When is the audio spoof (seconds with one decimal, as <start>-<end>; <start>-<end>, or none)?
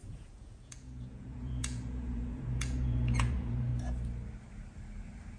0.0-3.7